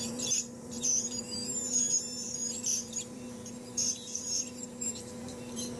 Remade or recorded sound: remade